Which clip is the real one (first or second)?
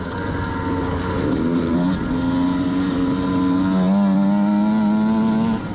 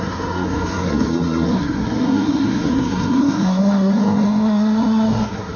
first